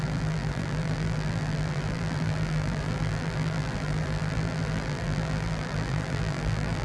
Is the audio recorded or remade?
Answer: remade